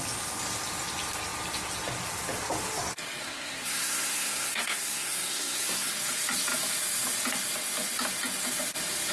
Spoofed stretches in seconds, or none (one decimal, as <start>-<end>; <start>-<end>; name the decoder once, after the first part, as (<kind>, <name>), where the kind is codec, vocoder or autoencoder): 3.2-5.9 (codec, SNAC)